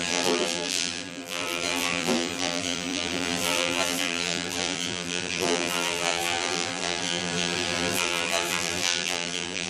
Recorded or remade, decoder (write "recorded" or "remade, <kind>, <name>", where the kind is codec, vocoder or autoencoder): remade, vocoder, BigVGAN v2